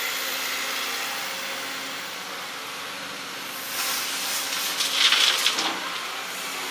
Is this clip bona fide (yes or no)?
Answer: yes